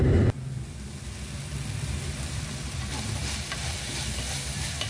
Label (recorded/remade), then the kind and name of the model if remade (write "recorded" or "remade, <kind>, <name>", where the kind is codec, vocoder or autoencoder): recorded